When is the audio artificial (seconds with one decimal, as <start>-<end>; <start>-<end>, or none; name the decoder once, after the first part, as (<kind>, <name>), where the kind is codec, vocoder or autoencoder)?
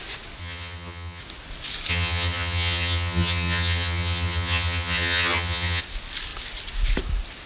0.4-1.2 (vocoder, HiFi-GAN); 1.9-5.8